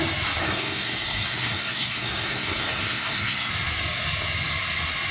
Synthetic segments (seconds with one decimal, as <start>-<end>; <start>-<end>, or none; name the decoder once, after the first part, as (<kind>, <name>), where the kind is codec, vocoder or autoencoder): 0.4-3.5 (codec, SNAC)